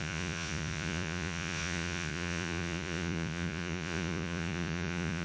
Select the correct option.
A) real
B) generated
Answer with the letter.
B